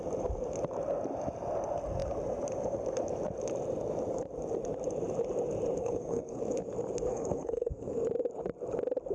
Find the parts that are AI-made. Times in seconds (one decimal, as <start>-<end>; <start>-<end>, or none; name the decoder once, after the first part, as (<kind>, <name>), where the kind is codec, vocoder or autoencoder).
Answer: 5.8-6.4 (codec, SNAC); 7.1-7.9